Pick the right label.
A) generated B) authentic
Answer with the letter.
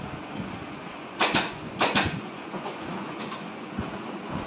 A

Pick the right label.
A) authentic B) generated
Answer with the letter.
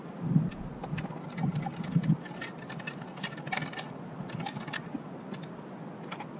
A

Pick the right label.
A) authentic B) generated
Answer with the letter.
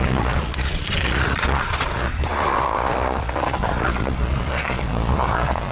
B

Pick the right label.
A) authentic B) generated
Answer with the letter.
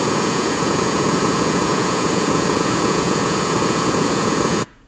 B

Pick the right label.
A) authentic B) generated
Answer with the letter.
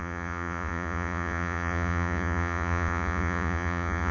B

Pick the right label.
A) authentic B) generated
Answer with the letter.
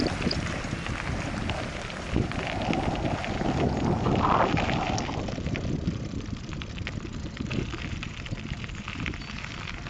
A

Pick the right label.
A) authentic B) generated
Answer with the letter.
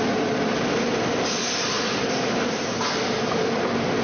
A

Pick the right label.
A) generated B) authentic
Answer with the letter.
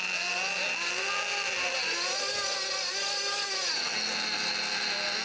B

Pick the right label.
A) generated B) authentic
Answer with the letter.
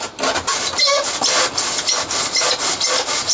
B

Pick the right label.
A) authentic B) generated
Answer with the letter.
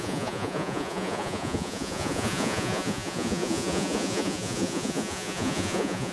B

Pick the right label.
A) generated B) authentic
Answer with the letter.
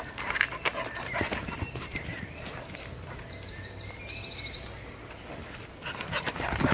B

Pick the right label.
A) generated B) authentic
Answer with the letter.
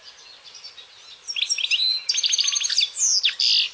B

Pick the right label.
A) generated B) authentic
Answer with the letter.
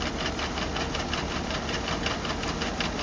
B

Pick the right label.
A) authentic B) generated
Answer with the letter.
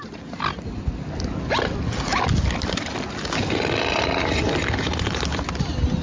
A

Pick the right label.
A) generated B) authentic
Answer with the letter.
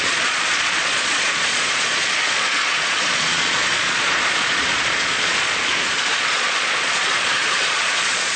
A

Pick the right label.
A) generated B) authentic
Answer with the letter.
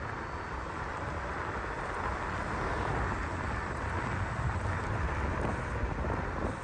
B